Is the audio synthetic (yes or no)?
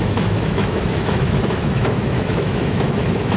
yes